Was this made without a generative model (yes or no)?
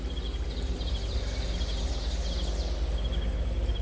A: yes